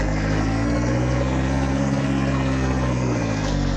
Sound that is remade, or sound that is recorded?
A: remade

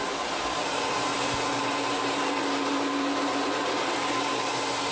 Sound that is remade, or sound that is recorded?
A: recorded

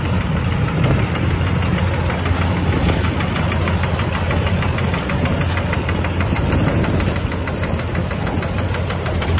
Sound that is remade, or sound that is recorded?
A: recorded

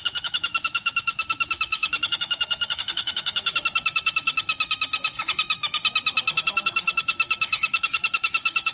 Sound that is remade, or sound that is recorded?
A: remade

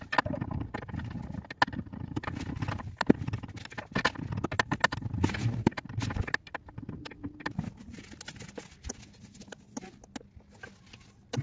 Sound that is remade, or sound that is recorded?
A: recorded